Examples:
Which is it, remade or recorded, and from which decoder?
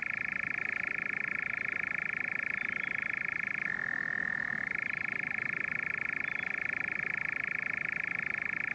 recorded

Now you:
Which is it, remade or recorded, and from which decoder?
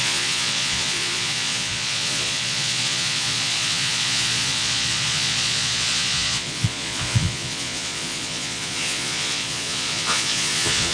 remade, vocoder, Vocos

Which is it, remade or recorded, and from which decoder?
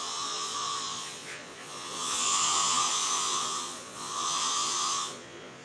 remade, vocoder, Vocos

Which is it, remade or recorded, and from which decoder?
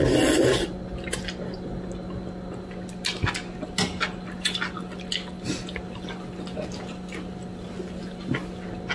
recorded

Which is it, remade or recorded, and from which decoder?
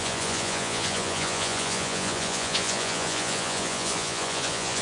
remade, vocoder, Vocos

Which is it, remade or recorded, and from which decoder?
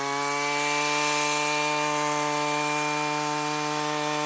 recorded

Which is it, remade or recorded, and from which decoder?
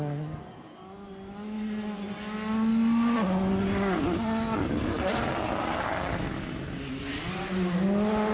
recorded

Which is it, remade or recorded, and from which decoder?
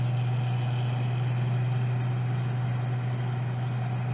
recorded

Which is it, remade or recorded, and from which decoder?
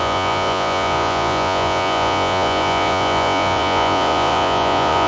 remade, vocoder, Vocos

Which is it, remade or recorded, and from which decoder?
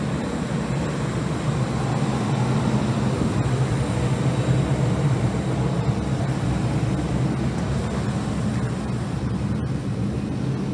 recorded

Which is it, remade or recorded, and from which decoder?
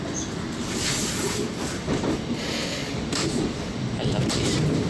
recorded